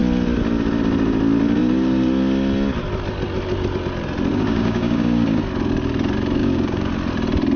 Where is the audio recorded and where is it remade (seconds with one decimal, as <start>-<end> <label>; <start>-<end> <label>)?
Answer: 0.0-4.3 recorded; 4.3-5.4 remade; 5.4-6.4 recorded; 6.4-6.9 remade; 6.9-7.6 recorded